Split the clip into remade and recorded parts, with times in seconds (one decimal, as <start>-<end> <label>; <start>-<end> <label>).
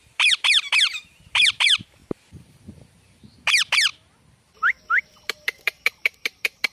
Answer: 0.0-3.9 remade; 3.9-5.0 recorded; 5.0-6.7 remade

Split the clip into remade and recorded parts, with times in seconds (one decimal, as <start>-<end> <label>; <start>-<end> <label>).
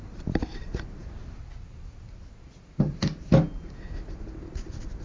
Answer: 0.0-5.0 recorded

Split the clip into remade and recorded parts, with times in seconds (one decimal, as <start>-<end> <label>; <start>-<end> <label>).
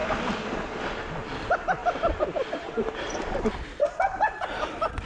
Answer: 0.0-1.8 recorded; 1.8-5.1 remade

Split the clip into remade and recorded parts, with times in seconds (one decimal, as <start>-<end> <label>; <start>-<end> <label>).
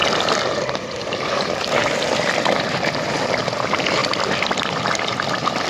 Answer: 0.0-5.7 recorded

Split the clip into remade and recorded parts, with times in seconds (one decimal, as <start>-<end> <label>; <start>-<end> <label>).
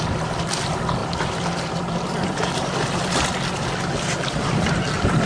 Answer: 0.0-1.0 recorded; 1.0-3.1 remade; 3.1-5.3 recorded